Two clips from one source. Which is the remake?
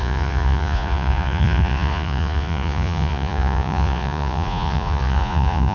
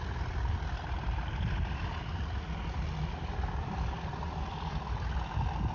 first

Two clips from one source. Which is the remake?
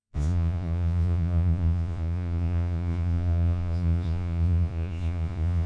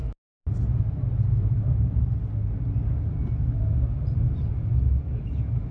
first